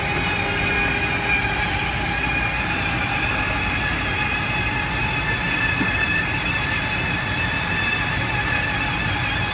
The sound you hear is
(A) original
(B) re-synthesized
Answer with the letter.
A